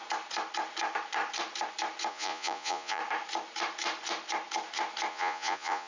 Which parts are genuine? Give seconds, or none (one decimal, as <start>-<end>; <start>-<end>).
0.0-2.1; 3.0-5.1